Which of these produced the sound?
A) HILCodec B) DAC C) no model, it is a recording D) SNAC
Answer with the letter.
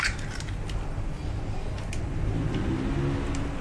C